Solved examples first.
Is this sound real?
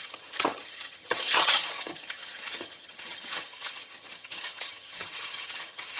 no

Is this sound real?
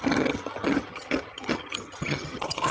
no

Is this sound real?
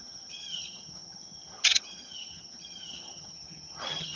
no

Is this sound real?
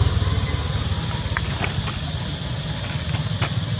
yes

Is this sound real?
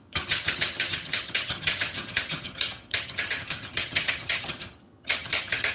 no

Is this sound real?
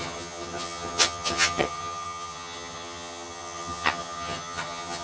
no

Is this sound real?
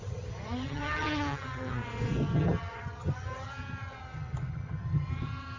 no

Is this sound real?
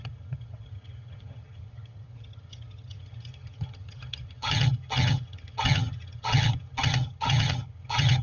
no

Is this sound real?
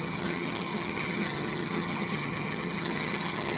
no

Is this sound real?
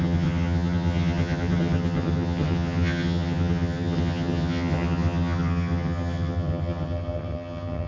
no